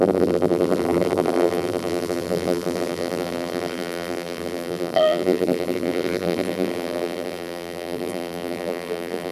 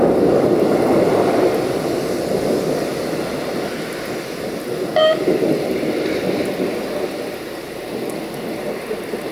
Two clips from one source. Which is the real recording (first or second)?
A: second